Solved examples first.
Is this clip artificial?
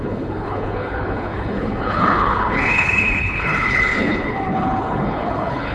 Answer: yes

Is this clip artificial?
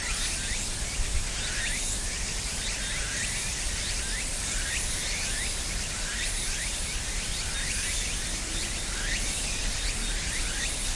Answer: no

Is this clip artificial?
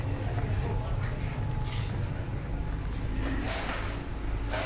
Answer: no